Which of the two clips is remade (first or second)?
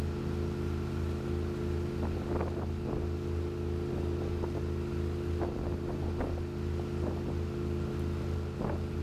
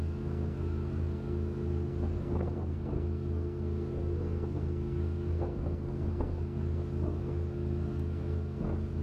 second